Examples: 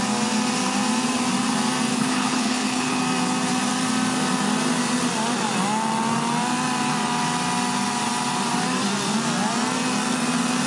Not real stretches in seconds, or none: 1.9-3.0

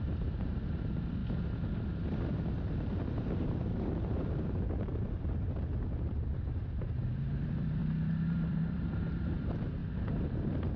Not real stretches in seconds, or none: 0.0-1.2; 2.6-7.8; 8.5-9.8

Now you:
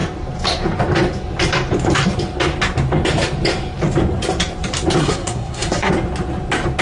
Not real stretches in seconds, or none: 5.0-5.9

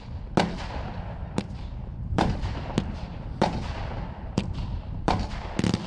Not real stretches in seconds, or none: 1.9-5.4

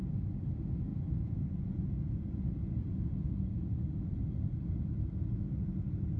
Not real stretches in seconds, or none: 0.9-4.3

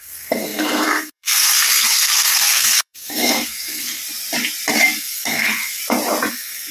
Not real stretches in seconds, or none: 0.0-4.0; 5.0-5.8; 6.3-6.7

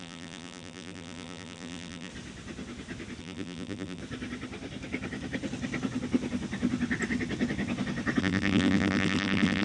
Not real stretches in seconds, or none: 0.0-2.1; 3.2-4.0; 8.2-9.6

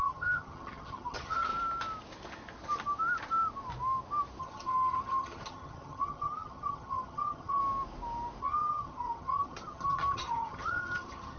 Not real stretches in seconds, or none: 0.0-1.5; 4.4-7.6; 8.4-11.4